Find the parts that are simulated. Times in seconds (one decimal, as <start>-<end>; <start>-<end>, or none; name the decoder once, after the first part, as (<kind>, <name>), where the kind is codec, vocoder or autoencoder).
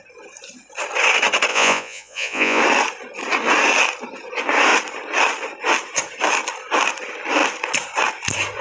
1.5-2.6 (vocoder, Vocos)